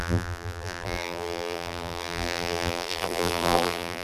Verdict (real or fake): fake